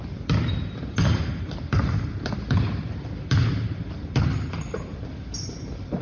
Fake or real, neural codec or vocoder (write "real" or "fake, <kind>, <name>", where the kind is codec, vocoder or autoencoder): real